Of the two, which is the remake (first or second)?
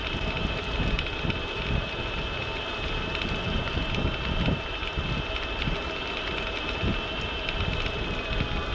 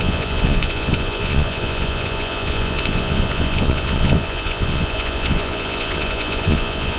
second